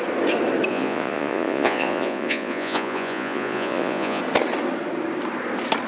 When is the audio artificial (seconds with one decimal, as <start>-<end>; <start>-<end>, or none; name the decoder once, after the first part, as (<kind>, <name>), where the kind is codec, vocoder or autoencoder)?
0.7-4.2 (vocoder, Vocos)